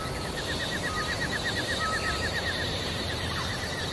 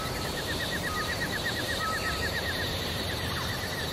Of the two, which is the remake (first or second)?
second